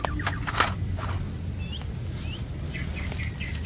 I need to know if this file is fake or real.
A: real